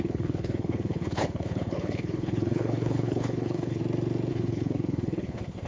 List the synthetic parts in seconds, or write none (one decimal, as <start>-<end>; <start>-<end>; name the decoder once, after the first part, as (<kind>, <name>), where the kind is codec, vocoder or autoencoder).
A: 0.0-3.8 (codec, HILCodec); 4.3-5.7